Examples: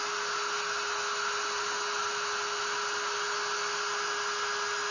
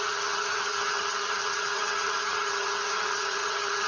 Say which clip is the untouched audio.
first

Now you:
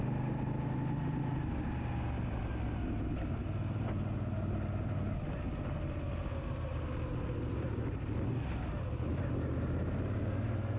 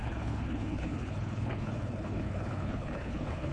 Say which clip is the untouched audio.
first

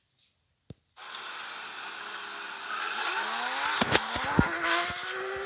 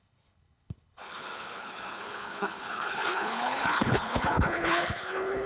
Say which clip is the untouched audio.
first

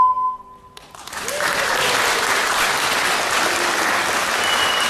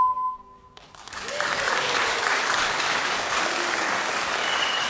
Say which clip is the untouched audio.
first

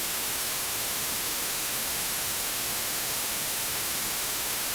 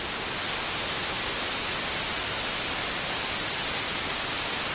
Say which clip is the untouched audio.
second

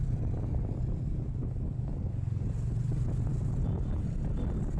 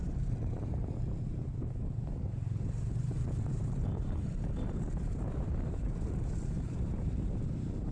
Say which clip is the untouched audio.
first